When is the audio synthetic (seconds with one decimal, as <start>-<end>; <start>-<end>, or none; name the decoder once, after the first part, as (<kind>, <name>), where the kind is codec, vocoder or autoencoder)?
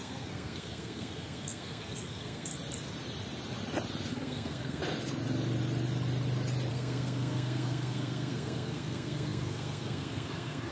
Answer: 0.0-2.5 (codec, SNAC); 4.1-4.8; 6.7-10.7